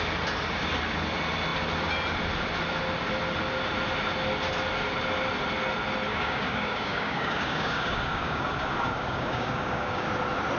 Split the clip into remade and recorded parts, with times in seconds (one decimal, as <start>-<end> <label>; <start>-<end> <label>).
0.0-6.1 recorded; 6.1-10.1 remade; 10.1-10.6 recorded